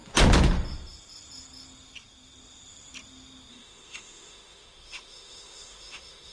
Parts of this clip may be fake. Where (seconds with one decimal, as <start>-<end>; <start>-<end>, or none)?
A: 3.5-6.3

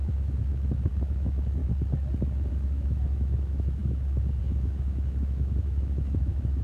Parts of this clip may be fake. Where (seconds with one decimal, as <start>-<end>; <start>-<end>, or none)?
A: 0.0-1.6; 2.5-6.6

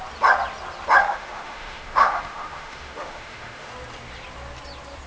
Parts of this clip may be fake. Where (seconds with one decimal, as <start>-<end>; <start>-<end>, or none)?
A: 1.0-3.7